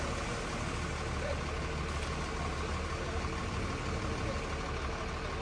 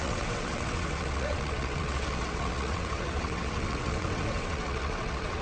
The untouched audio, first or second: first